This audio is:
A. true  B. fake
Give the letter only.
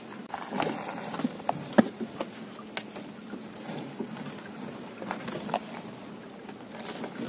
A